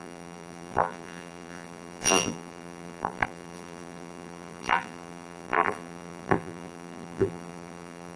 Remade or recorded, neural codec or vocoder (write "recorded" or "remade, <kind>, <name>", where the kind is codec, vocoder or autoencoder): remade, vocoder, BigVGAN v2